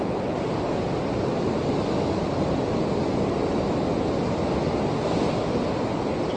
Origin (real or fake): real